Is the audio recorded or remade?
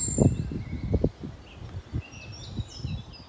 recorded